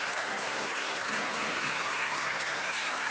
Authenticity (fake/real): fake